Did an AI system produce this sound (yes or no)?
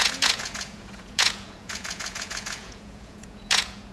yes